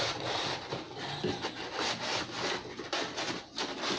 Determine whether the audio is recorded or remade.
recorded